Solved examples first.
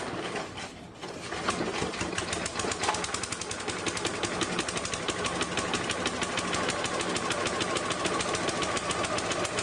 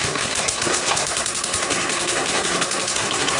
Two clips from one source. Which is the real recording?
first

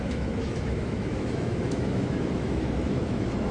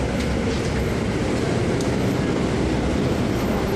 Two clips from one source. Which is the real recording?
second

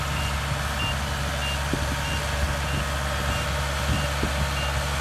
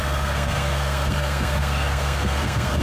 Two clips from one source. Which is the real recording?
first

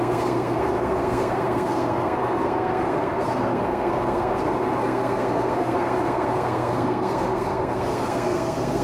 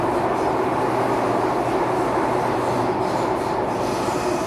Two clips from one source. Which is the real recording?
second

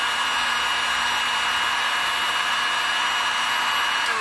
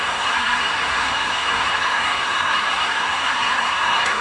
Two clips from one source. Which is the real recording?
first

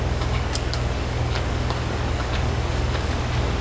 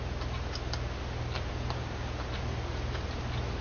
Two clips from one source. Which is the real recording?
second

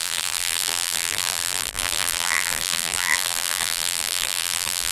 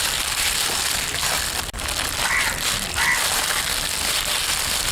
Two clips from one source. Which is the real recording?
second